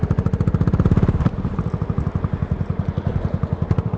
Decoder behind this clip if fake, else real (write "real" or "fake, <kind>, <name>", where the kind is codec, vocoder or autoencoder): real